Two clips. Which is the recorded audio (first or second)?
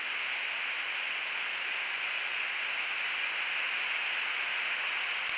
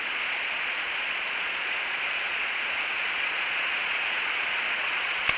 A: first